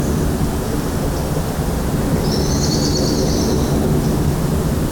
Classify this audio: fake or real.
real